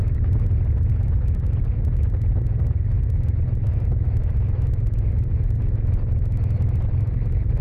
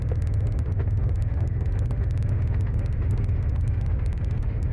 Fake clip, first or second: second